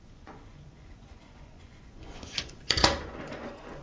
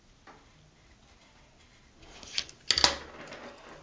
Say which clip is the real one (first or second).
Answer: second